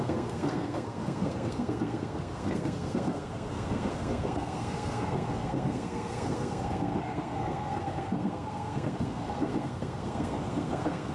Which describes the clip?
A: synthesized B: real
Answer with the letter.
A